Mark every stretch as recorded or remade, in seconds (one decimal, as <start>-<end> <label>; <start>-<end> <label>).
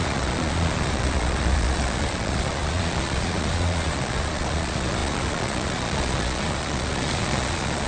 0.0-7.9 remade